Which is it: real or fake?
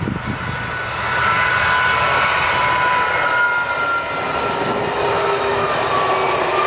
real